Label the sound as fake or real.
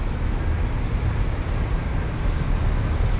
real